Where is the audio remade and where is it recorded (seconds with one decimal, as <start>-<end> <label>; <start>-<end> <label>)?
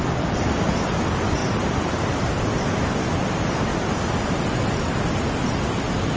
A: 0.0-6.2 recorded